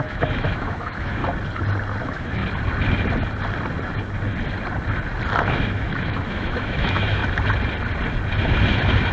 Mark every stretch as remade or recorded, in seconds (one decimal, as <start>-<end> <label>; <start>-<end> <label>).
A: 0.0-1.2 remade; 1.2-2.0 recorded; 2.0-2.4 remade; 2.4-5.4 recorded; 5.4-7.2 remade; 7.2-9.1 recorded